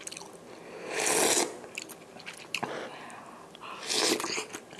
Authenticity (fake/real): real